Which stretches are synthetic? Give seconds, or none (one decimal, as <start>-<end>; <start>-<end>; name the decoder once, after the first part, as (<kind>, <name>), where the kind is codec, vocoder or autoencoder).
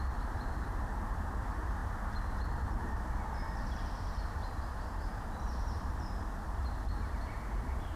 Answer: 0.0-8.0 (vocoder, BigVGAN v2)